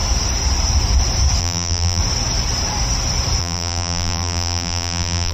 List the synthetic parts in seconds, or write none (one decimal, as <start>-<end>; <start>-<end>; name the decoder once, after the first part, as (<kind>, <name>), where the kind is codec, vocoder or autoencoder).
1.4-2.0 (vocoder, BigVGAN v2); 3.4-5.3